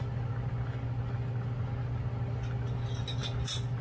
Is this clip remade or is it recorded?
recorded